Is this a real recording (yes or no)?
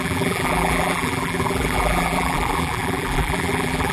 no